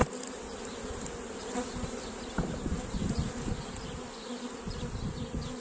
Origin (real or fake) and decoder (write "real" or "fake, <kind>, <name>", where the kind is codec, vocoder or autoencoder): real